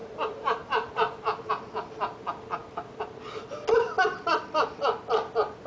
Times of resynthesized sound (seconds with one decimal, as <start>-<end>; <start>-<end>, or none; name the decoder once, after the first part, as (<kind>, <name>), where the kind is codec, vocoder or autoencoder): 0.0-1.5 (vocoder, BigVGAN v2)

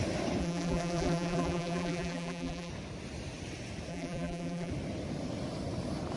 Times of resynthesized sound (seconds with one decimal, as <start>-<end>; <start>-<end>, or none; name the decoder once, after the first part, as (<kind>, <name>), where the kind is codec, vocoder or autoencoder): 0.4-2.7 (vocoder, BigVGAN v2); 3.9-4.7

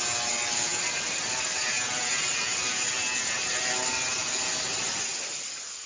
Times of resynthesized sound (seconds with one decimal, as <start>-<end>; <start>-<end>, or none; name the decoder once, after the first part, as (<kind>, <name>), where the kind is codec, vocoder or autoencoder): 0.7-4.2 (vocoder, BigVGAN v2)

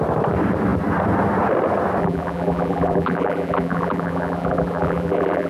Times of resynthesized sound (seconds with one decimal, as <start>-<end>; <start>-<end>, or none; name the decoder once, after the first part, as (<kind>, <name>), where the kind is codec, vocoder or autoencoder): 2.0-5.5 (vocoder, BigVGAN v2)

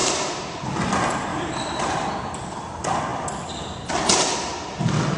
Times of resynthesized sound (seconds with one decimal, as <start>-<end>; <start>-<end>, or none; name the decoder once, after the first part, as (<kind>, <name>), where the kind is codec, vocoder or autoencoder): 0.0-0.7 (vocoder, BigVGAN v2); 1.3-2.1